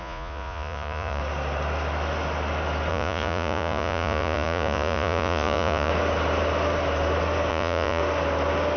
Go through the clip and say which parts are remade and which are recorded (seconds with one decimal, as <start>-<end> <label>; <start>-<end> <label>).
0.0-1.2 remade; 1.2-2.9 recorded; 2.9-5.9 remade; 5.9-7.5 recorded; 7.5-8.0 remade; 8.0-8.8 recorded